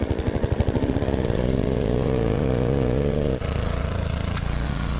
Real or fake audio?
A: fake